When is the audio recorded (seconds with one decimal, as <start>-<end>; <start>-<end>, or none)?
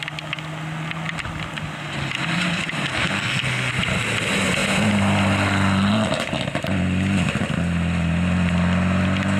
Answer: 0.0-2.9; 3.7-9.4